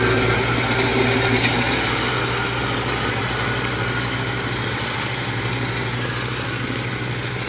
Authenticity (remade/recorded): recorded